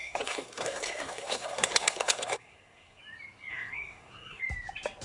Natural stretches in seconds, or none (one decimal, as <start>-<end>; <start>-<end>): 3.0-3.5; 4.4-5.0